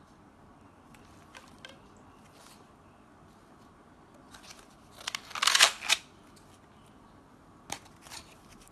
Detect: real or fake real